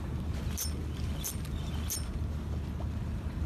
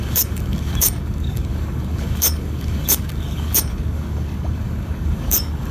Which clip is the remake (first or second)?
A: second